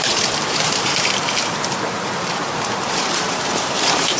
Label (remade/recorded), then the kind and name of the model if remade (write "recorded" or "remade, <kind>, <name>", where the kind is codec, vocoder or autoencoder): remade, vocoder, BigVGAN v2